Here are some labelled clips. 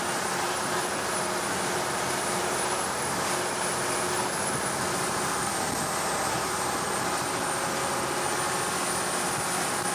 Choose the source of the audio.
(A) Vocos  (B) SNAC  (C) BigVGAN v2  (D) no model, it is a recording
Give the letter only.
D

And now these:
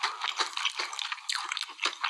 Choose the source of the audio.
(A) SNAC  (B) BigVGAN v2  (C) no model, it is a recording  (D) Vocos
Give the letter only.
C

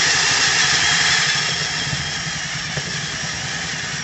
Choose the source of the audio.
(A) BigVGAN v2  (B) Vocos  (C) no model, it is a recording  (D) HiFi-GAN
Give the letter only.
C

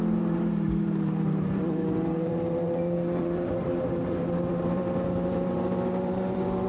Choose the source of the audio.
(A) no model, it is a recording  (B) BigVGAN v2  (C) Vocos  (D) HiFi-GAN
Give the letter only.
B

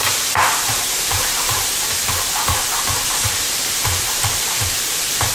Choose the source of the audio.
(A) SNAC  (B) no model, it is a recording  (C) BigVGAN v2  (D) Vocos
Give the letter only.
C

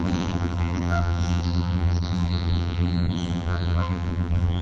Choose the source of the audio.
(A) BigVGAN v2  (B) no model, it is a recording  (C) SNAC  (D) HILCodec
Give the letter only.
A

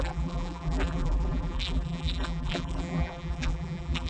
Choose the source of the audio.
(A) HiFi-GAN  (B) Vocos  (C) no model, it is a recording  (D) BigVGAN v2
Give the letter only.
D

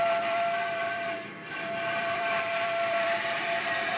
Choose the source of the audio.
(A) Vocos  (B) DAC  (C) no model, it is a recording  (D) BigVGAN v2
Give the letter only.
D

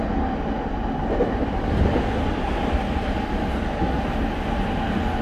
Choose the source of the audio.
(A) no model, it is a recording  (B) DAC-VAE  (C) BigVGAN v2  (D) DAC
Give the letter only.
A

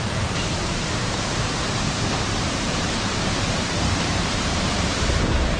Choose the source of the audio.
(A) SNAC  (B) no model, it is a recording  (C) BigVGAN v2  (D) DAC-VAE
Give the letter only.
C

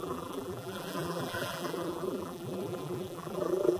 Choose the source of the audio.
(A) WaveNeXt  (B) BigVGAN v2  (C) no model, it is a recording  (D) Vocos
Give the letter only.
B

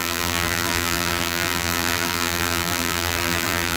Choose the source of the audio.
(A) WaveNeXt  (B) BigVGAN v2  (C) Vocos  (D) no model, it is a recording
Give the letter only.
B